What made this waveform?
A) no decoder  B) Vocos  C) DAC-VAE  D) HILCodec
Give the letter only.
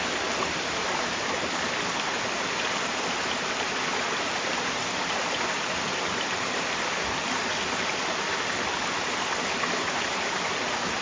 A